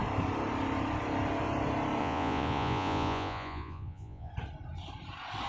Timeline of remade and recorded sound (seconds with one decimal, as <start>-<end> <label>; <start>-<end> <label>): 0.0-2.0 recorded; 2.0-4.3 remade; 4.3-5.5 recorded